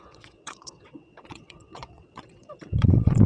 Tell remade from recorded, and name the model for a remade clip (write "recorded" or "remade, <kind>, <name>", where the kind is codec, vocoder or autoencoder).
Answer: remade, vocoder, WaveNeXt